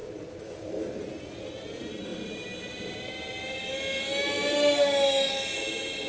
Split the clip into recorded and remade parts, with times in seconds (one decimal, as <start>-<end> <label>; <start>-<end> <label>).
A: 0.0-6.1 recorded